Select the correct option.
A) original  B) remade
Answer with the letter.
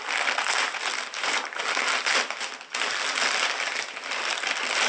A